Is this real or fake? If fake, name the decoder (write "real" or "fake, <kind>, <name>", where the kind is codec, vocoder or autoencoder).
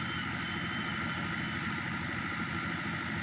real